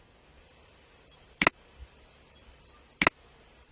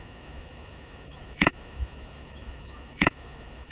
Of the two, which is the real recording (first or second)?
first